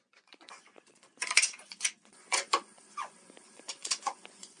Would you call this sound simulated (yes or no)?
yes